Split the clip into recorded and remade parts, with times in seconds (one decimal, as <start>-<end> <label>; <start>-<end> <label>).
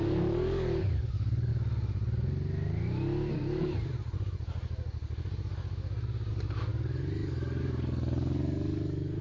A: 0.0-1.5 remade; 1.5-6.3 recorded; 6.3-9.2 remade